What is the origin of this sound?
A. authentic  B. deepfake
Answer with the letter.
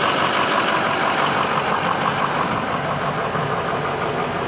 A